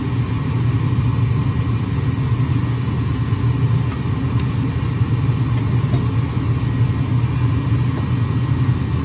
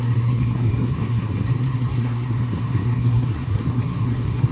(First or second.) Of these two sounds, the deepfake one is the second